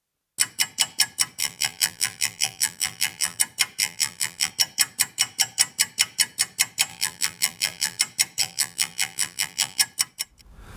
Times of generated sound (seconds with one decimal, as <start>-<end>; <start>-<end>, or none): 1.4-3.4; 3.8-4.5; 6.9-8.0; 8.4-9.8